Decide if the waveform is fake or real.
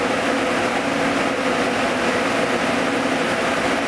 real